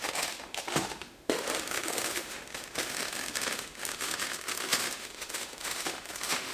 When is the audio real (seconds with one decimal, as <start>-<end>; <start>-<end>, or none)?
none